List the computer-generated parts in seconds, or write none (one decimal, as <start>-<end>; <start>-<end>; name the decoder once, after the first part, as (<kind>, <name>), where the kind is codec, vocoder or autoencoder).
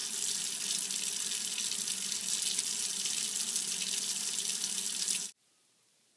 none